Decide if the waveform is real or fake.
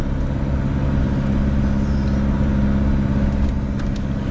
real